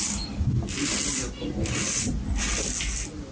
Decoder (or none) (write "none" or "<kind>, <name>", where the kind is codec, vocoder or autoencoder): none